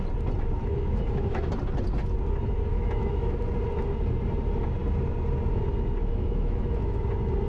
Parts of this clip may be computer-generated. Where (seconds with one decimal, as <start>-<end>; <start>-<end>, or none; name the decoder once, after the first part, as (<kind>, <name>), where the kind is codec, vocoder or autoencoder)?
0.7-1.5 (autoencoder, DAC-VAE); 2.7-3.4; 6.1-7.0